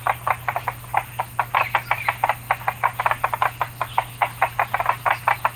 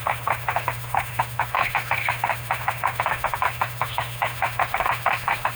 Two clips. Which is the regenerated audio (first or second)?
second